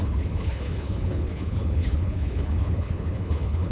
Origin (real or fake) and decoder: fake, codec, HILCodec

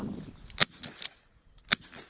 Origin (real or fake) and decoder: real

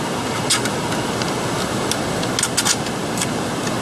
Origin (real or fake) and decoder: real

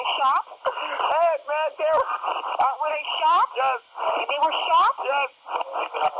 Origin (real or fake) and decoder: real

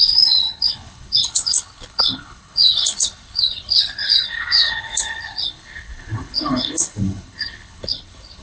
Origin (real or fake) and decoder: fake, codec, HILCodec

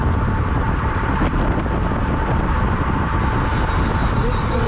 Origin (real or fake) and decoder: real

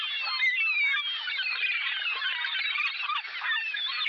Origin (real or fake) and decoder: real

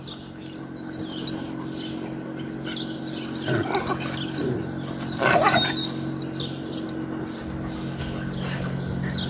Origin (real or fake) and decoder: real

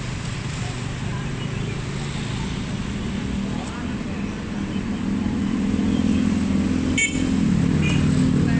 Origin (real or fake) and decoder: real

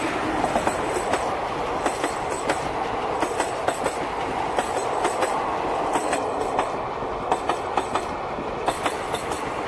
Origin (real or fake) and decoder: real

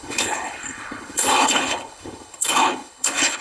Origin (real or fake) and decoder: fake, codec, HILCodec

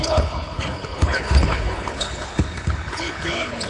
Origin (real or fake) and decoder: fake, codec, HILCodec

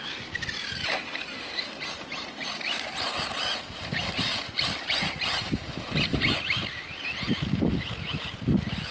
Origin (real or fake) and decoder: real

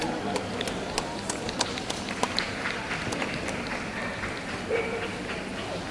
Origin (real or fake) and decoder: real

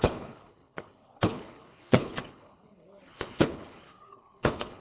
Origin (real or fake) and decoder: fake, codec, HILCodec